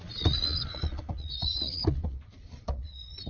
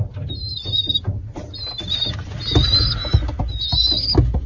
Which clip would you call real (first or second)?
second